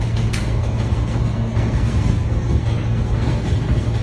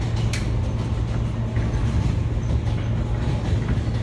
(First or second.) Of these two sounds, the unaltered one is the second